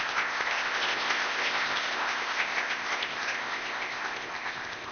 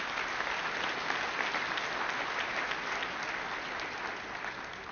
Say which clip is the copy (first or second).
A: first